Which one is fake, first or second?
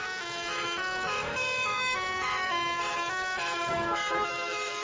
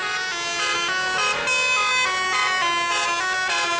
first